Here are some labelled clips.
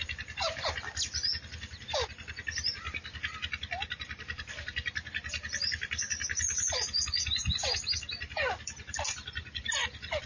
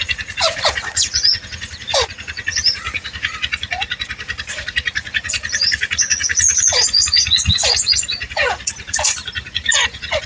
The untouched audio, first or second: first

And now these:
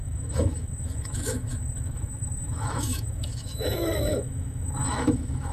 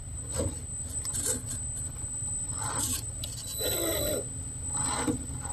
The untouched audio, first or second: second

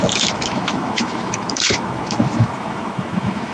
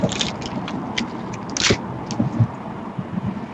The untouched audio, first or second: second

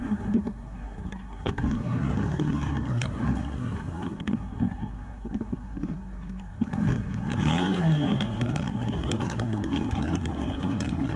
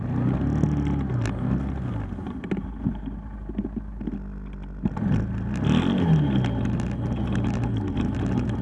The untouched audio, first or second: second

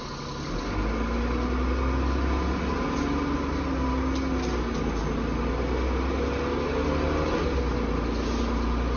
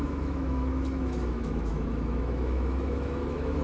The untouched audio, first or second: first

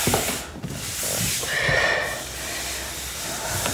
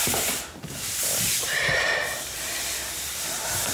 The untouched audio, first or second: first